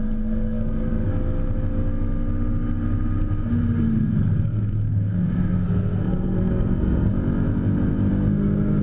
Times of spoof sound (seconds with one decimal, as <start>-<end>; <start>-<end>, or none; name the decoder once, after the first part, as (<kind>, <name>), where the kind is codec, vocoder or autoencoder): 0.0-1.1 (codec, SNAC); 4.0-7.1; 8.1-8.8